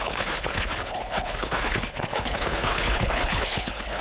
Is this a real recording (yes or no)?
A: no